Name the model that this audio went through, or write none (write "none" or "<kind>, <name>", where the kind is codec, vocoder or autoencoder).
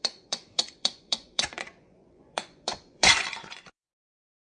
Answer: vocoder, Vocos